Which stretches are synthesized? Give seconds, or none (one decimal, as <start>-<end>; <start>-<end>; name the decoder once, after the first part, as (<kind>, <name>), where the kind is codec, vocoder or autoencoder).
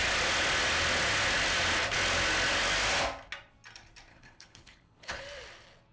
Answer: 4.1-5.2 (codec, HILCodec)